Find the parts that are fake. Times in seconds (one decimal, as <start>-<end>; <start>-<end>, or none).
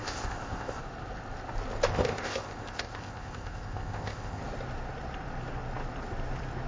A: 0.0-0.8; 1.9-4.4